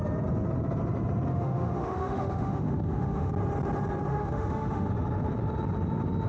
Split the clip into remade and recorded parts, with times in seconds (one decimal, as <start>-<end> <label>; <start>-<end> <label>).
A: 0.0-1.3 recorded; 1.3-3.3 remade; 3.3-4.1 recorded; 4.1-4.9 remade; 4.9-6.3 recorded